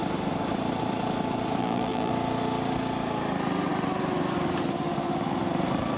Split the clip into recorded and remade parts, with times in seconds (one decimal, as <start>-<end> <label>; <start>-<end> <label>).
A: 0.0-1.6 recorded; 1.6-2.1 remade; 2.1-6.0 recorded